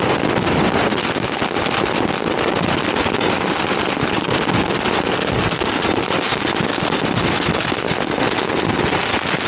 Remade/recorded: recorded